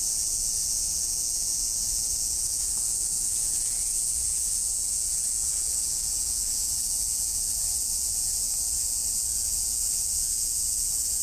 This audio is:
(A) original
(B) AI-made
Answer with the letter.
B